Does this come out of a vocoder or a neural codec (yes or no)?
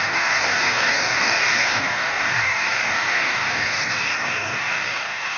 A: yes